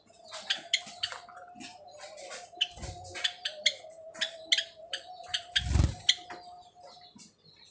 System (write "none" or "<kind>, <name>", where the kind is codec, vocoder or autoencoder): none